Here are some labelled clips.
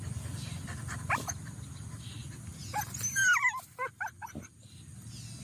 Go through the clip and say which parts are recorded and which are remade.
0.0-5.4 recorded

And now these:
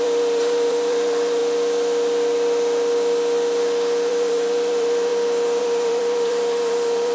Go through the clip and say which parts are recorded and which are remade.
0.0-1.4 remade; 1.4-4.1 recorded; 4.1-5.1 remade; 5.1-5.6 recorded; 5.6-7.1 remade

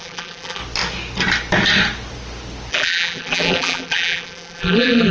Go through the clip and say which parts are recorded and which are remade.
0.0-0.6 remade; 0.6-2.7 recorded; 2.7-5.1 remade